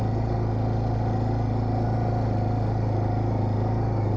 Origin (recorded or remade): recorded